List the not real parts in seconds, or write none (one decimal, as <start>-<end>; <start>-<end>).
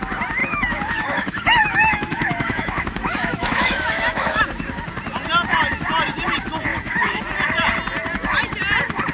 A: 0.4-4.4; 6.7-7.2